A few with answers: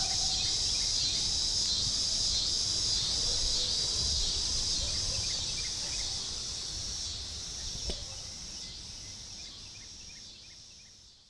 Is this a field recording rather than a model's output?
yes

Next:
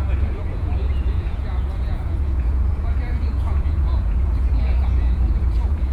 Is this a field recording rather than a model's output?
no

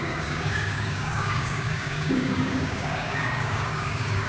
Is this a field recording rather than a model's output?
no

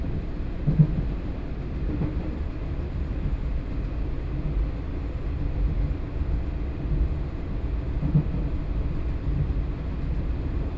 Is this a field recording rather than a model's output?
yes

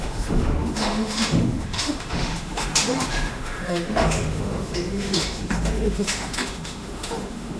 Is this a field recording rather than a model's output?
no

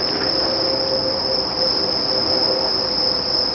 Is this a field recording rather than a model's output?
yes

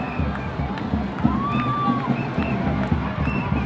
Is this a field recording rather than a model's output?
yes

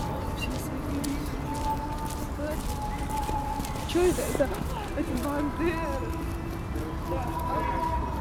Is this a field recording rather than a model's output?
yes